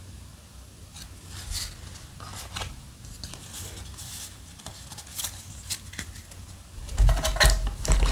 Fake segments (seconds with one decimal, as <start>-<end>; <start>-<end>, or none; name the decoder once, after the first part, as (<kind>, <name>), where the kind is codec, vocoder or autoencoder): none

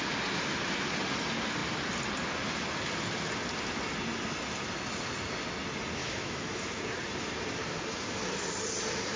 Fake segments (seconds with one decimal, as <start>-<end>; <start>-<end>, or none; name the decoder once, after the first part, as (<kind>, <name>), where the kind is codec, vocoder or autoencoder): 6.0-6.8 (autoencoder, DAC-VAE)

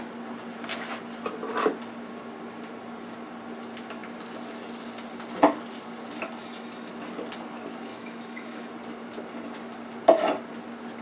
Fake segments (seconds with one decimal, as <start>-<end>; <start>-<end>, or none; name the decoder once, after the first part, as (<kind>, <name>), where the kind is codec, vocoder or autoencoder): 6.4-6.9 (autoencoder, DAC-VAE); 7.9-8.7

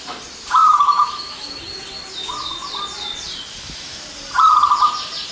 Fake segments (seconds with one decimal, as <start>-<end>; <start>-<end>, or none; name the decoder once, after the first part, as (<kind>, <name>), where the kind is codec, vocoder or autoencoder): 0.6-1.6 (autoencoder, DAC-VAE); 3.5-4.0